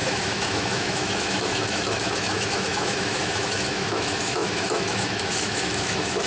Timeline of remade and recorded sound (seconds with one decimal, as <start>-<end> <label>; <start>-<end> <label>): 0.0-6.3 remade

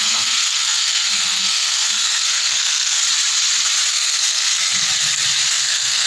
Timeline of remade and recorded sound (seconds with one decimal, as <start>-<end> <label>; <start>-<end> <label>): 0.0-3.0 remade; 3.0-3.9 recorded; 3.9-4.9 remade; 4.9-5.5 recorded; 5.5-6.1 remade

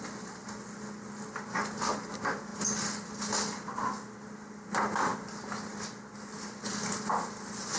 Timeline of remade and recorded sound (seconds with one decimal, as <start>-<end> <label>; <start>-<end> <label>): 0.0-7.8 recorded

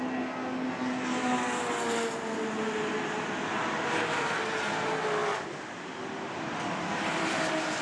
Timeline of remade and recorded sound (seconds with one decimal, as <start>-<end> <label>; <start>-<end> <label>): 0.0-7.8 recorded